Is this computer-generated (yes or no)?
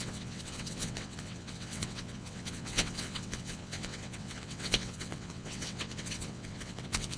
yes